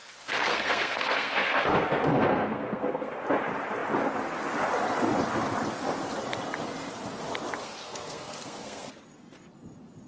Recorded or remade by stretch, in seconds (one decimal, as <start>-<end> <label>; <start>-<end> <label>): 0.0-3.1 remade; 3.1-7.6 recorded; 7.6-8.9 remade; 8.9-10.1 recorded